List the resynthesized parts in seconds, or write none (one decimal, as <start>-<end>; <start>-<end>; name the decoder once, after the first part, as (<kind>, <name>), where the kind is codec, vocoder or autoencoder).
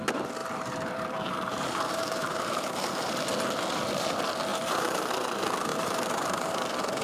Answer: 0.4-3.1 (vocoder, BigVGAN v2); 4.5-5.1; 5.7-6.5